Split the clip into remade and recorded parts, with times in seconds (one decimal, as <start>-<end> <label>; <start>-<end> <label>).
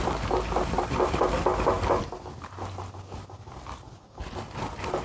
0.0-5.0 recorded